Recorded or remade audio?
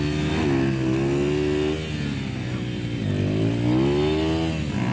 recorded